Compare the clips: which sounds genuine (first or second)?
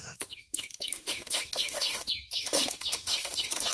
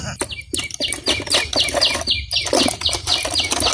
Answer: second